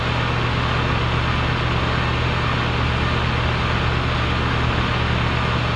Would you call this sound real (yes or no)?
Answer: yes